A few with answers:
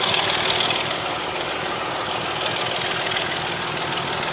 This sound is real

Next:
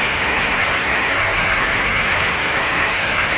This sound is fake